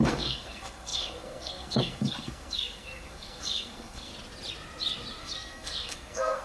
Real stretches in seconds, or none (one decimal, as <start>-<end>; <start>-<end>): 4.1-5.2